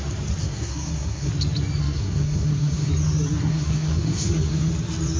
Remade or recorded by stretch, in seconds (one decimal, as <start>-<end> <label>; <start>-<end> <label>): 0.0-0.4 recorded; 0.4-1.3 remade; 1.3-1.8 recorded; 1.8-2.9 remade; 2.9-3.4 recorded; 3.4-4.7 remade; 4.7-5.2 recorded